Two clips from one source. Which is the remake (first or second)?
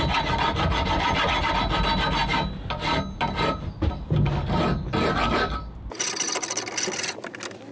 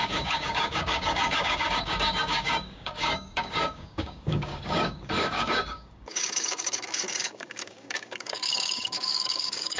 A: second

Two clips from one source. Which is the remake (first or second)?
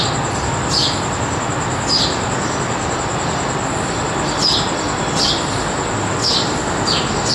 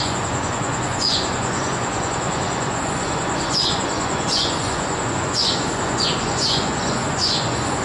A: second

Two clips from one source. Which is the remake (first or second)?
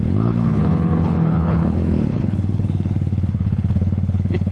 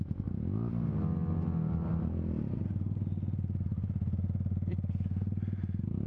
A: first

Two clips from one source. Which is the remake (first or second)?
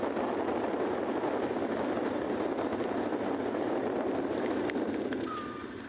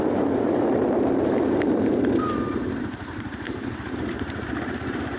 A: second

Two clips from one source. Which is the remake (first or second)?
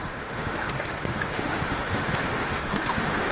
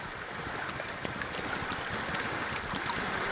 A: first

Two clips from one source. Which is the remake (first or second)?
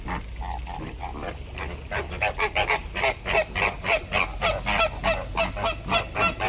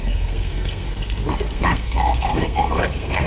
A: second